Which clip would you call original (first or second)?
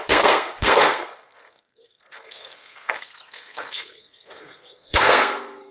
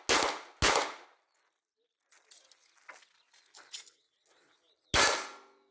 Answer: second